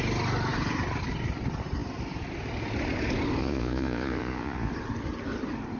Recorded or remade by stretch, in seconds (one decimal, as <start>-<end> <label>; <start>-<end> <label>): 0.0-3.4 recorded; 3.4-4.7 remade; 4.7-5.8 recorded